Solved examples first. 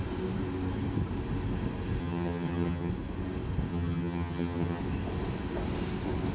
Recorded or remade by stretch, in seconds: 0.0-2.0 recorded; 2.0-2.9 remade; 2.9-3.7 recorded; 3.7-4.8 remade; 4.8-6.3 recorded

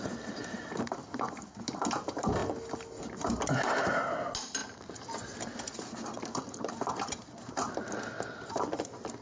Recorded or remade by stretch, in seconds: 0.0-9.2 recorded

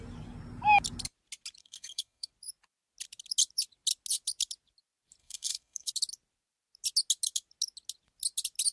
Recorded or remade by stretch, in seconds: 0.0-1.6 recorded; 1.6-2.3 remade; 2.3-5.2 recorded; 5.2-5.9 remade; 5.9-8.7 recorded